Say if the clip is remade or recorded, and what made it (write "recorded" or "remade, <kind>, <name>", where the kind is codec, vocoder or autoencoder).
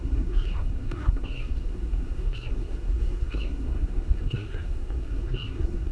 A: remade, codec, SNAC